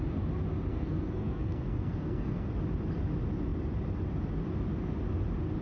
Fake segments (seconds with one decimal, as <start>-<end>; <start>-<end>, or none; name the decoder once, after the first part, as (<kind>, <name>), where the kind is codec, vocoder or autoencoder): 0.7-2.5 (codec, SNAC)